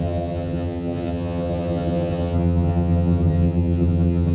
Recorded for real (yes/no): no